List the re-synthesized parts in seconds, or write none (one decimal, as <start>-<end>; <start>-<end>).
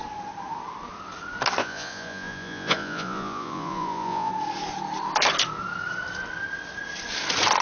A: 1.6-4.3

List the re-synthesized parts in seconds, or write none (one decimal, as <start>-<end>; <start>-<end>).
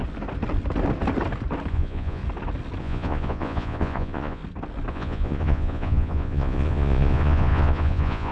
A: 1.7-2.2; 2.8-4.4; 4.9-8.3